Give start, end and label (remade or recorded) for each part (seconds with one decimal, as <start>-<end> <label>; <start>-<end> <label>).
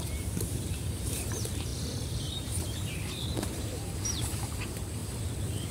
0.0-5.0 remade; 5.0-5.7 recorded